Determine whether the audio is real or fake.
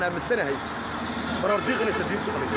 real